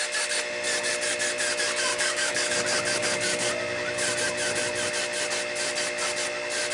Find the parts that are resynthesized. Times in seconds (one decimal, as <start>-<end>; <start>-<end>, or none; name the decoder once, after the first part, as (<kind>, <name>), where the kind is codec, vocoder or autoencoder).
1.9-2.5 (codec, DAC); 3.0-3.5